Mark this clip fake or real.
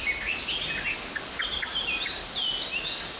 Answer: real